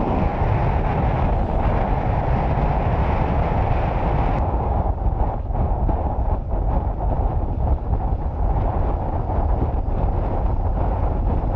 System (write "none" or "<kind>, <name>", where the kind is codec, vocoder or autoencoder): none